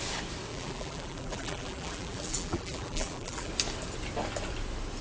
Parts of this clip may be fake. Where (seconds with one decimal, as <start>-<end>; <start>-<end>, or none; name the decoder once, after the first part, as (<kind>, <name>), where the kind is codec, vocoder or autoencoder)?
0.5-3.5 (vocoder, BigVGAN v2)